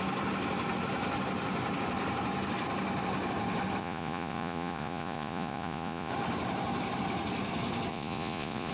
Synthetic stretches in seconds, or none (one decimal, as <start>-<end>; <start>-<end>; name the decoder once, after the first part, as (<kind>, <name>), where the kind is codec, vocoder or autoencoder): 3.8-6.1 (vocoder, Vocos); 7.9-8.7